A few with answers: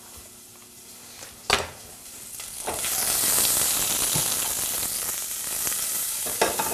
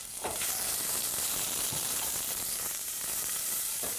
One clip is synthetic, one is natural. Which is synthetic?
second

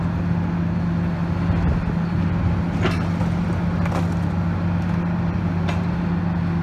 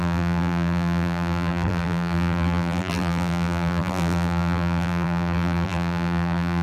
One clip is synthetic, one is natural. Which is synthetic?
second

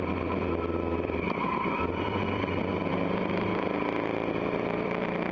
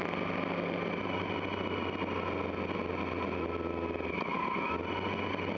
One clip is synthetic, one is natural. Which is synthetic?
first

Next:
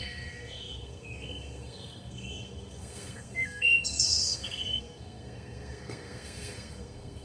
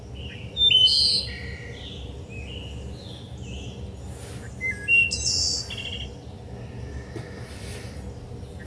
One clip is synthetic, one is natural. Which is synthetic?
first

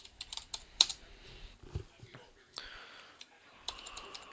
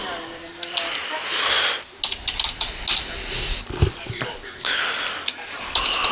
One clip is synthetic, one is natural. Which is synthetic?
first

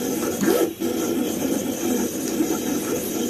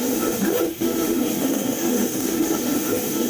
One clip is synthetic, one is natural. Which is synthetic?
second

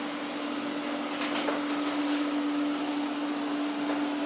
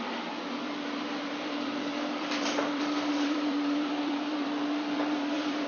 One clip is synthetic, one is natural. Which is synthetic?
second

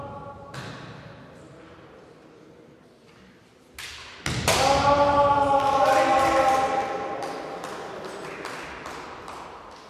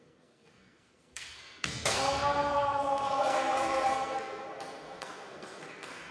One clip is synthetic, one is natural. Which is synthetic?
second